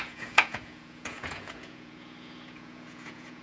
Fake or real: fake